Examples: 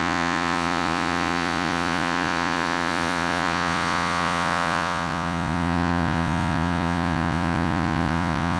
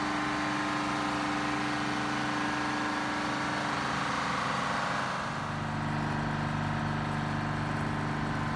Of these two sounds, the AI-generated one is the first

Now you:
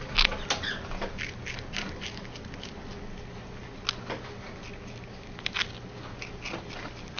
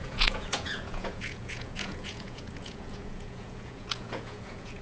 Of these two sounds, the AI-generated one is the second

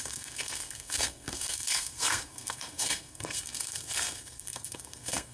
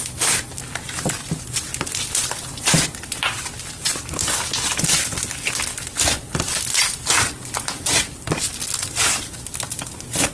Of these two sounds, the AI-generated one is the first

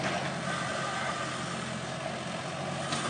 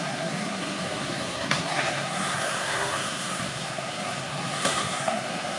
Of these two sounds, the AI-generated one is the second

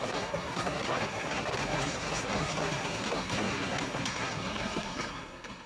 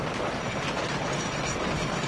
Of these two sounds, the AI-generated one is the first